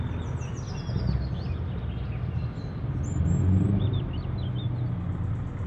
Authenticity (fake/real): real